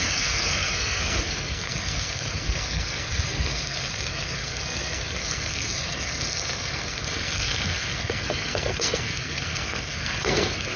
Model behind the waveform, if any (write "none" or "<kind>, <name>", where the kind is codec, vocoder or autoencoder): codec, SNAC